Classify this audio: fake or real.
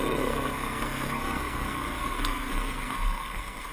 fake